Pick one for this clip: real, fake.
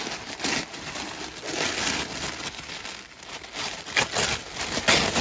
real